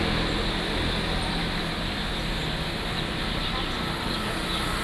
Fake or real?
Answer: real